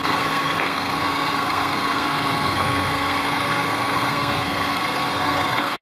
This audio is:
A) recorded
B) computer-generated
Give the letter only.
B